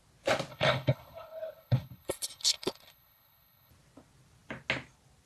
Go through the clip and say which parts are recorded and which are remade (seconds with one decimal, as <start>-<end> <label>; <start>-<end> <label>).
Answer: 0.0-0.5 recorded; 0.5-3.7 remade; 3.7-5.3 recorded